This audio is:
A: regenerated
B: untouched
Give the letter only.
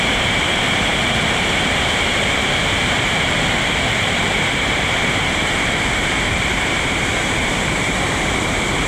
A